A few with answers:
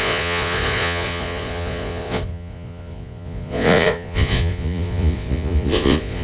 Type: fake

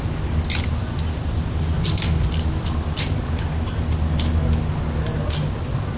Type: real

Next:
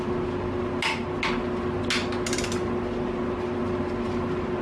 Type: real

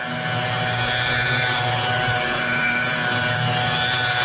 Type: real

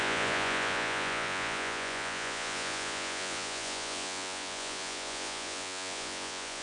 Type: fake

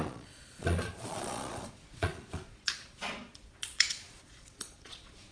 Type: fake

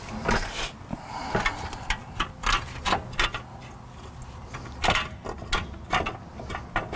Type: real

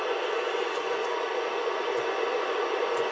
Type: fake